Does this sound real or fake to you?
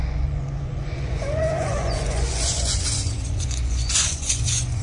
fake